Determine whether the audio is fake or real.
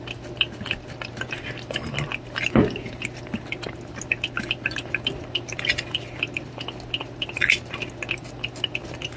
real